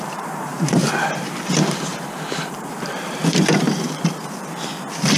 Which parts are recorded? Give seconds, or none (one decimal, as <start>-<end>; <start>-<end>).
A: 1.9-2.5; 3.2-5.2